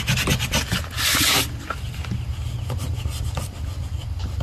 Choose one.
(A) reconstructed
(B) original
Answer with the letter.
B